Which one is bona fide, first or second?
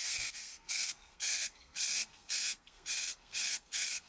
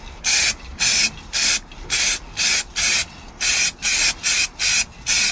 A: second